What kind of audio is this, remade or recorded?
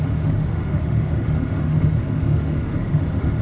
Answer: remade